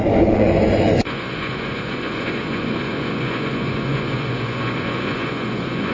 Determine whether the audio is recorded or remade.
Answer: remade